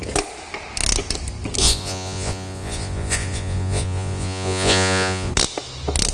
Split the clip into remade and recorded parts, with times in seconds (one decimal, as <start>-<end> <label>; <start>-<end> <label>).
0.0-1.6 recorded; 1.6-5.3 remade; 5.3-6.1 recorded